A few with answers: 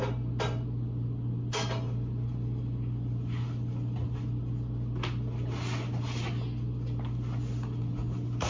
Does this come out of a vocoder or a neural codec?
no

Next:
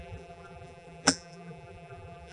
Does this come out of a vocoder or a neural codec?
yes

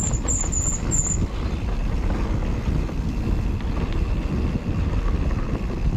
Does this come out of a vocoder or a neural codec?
no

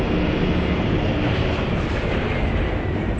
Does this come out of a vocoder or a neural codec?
no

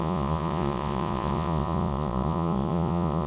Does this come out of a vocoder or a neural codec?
yes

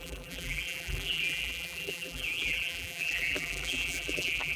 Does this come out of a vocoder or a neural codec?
yes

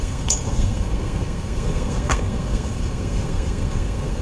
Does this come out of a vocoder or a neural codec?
yes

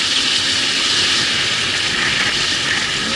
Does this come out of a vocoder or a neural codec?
no